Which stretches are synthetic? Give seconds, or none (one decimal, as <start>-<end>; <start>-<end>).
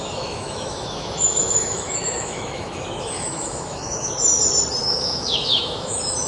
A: 0.0-4.3; 4.8-6.3